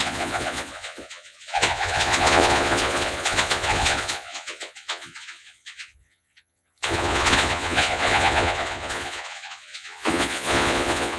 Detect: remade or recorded remade